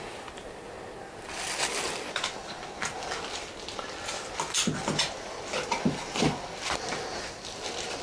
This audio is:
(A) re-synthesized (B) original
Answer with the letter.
B